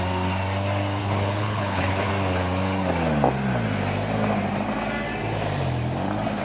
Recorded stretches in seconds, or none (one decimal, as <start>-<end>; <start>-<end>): 0.0-1.0; 2.1-6.4